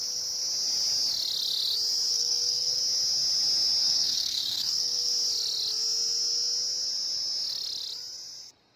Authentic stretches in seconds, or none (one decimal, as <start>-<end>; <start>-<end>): 0.0-2.1; 2.8-3.8; 5.1-8.8